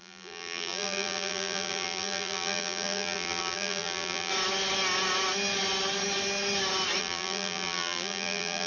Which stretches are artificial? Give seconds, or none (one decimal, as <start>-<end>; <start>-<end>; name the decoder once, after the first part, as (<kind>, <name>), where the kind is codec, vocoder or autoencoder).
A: 0.0-4.3 (vocoder, BigVGAN v2); 7.0-8.7